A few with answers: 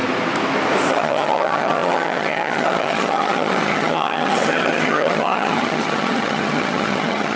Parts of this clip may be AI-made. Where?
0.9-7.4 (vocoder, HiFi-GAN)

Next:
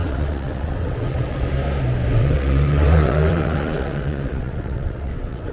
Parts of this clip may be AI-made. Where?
0.0-1.5 (vocoder, WaveNeXt); 2.1-5.5

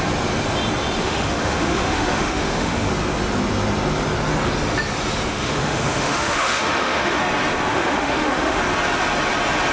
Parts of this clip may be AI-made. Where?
1.0-2.9 (autoencoder, DAC-VAE); 5.3-7.2; 7.7-8.6